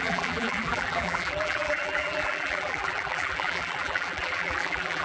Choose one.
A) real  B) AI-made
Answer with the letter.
B